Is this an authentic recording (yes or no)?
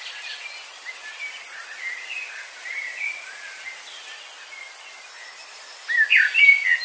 yes